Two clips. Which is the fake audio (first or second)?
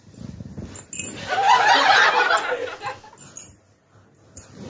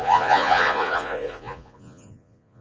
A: second